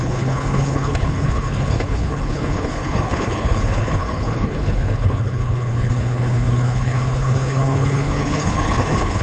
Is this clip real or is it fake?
fake